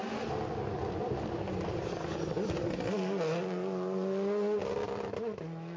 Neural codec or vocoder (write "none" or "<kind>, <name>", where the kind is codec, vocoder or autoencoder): none